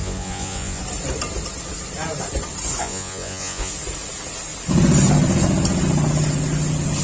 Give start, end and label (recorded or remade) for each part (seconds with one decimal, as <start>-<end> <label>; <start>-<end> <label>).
0.0-0.8 remade; 0.8-2.8 recorded; 2.8-3.7 remade; 3.7-7.0 recorded